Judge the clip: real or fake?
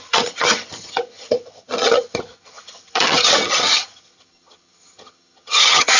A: fake